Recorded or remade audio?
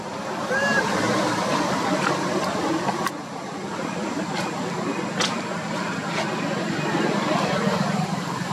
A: remade